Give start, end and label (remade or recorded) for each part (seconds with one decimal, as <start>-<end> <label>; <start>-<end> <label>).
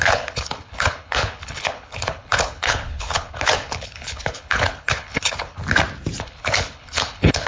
0.0-5.6 remade; 5.6-6.2 recorded; 6.2-7.5 remade